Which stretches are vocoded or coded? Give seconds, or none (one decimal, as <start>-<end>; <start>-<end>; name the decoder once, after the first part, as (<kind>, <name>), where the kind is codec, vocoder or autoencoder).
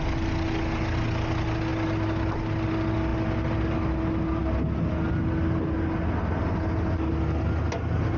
none